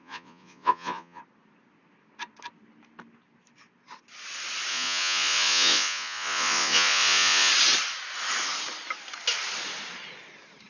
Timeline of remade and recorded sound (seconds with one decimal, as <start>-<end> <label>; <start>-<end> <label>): 0.0-1.2 remade; 1.2-4.7 recorded; 4.7-7.5 remade; 7.5-10.7 recorded